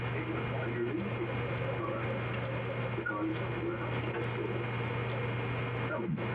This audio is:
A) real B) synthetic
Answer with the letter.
A